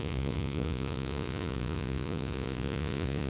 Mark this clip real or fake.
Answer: fake